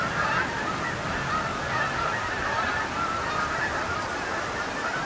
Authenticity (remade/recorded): recorded